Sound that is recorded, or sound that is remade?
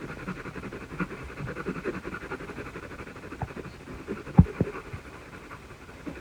remade